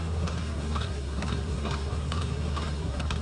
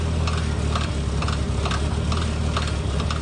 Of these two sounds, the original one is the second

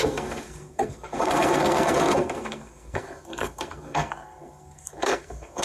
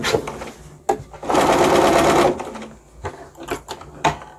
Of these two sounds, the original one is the second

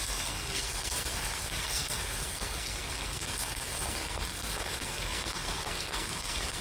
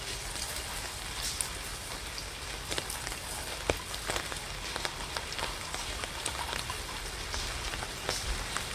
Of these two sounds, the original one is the second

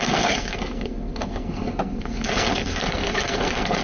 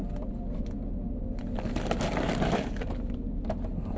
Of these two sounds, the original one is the second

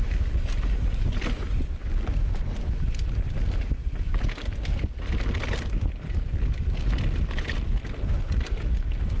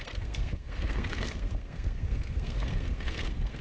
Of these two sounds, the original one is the first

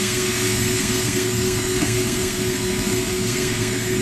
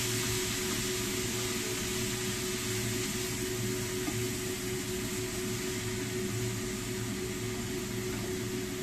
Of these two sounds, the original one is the second